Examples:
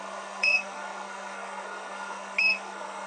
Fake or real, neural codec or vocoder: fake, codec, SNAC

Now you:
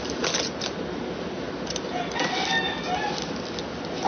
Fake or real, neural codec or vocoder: real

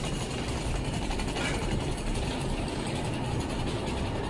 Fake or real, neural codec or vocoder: fake, vocoder, BigVGAN v2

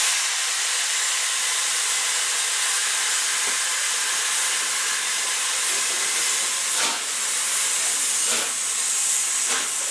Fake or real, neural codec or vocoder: real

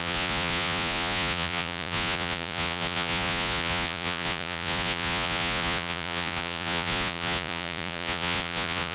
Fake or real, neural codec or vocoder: fake, vocoder, Vocos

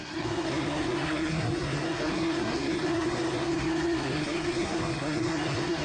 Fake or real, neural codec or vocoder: fake, codec, SNAC